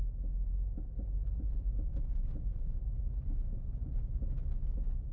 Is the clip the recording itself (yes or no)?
yes